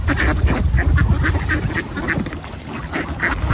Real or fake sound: real